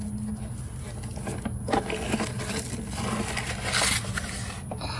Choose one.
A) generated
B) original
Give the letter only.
B